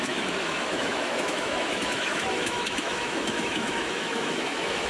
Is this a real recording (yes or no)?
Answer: no